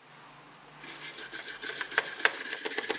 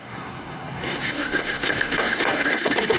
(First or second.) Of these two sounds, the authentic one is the first